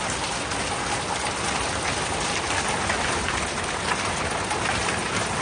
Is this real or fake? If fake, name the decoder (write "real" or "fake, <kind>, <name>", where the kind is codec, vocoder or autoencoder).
real